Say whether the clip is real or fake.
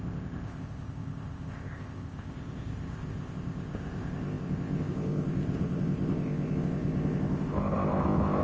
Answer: fake